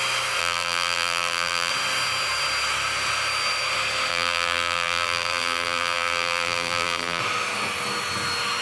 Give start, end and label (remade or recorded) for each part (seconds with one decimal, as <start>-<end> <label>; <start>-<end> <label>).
0.0-0.4 recorded; 0.4-1.7 remade; 1.7-4.1 recorded; 4.1-7.2 remade; 7.2-8.6 recorded